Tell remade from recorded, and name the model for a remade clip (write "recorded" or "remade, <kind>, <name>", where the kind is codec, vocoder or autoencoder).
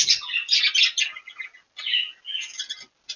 recorded